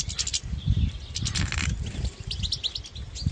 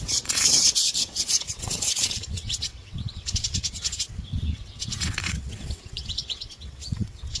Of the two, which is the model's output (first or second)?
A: second